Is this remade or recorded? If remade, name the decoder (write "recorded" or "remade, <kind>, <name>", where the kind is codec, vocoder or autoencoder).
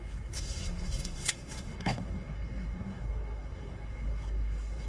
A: remade, codec, SNAC